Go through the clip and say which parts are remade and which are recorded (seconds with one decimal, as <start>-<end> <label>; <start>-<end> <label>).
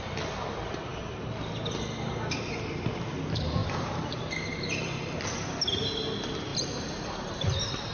0.0-3.6 recorded; 3.6-4.2 remade; 4.2-6.5 recorded; 6.5-7.9 remade